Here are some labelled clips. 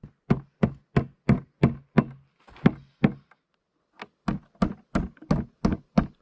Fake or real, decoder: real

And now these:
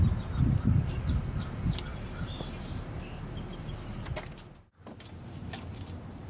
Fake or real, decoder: real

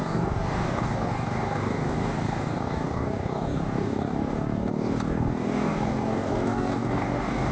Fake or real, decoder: fake, codec, DAC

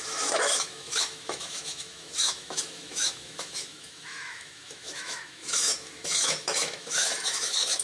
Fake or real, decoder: fake, autoencoder, DAC-VAE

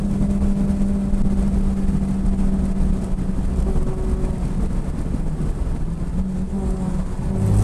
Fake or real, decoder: real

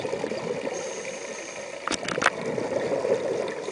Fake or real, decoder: real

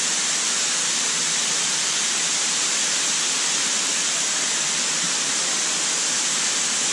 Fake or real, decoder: real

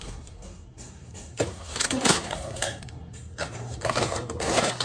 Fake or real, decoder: fake, codec, SNAC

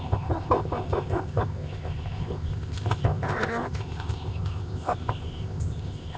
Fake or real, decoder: fake, codec, ZipCodec